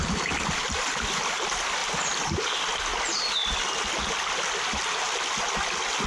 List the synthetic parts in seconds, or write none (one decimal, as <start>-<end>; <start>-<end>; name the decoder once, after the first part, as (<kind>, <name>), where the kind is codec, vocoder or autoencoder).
none